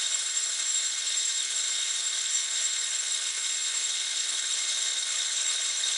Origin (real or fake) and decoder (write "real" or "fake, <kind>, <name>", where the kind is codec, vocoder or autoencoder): fake, codec, HILCodec